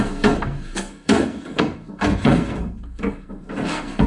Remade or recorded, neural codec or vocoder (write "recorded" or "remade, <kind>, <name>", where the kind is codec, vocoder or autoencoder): remade, codec, SNAC